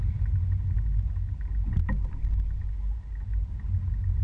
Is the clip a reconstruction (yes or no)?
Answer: no